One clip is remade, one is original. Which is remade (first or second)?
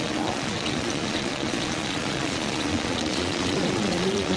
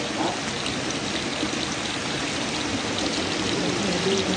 first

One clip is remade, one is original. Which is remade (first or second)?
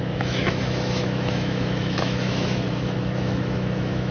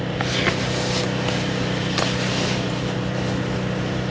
first